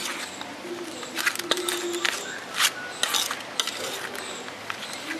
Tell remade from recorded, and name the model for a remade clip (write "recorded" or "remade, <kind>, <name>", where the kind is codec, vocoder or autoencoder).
recorded